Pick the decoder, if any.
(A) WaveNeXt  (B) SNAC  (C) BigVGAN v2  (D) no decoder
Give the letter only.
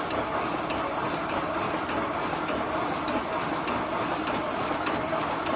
D